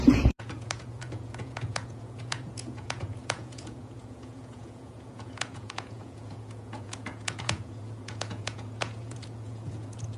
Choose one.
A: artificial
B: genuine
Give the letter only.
A